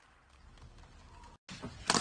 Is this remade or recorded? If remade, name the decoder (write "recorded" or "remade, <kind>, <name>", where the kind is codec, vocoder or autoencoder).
recorded